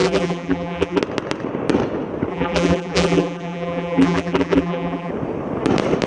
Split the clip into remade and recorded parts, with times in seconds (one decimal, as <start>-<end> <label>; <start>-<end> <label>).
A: 0.0-1.0 remade; 1.0-2.3 recorded; 2.3-5.1 remade; 5.1-6.1 recorded